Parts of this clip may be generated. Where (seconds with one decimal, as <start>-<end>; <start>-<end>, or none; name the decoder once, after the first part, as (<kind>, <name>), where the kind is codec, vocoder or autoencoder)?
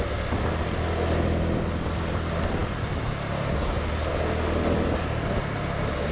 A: none